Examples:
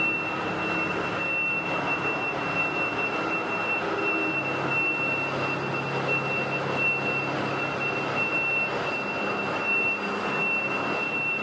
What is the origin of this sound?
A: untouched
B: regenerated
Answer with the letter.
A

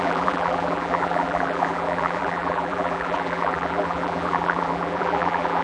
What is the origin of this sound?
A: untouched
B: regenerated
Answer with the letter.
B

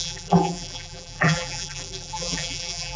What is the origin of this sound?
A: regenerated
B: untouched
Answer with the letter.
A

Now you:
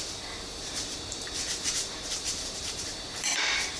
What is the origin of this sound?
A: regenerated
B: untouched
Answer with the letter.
A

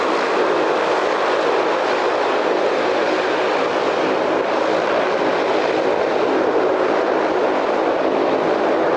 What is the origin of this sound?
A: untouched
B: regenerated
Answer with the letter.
A